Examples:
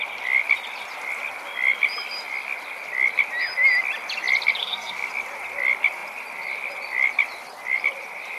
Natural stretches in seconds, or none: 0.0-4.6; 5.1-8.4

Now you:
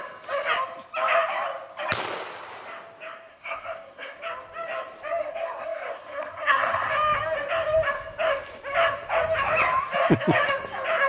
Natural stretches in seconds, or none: 0.0-3.3; 4.2-5.2; 6.9-11.1

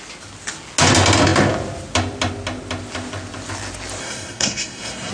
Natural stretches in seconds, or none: 0.0-4.0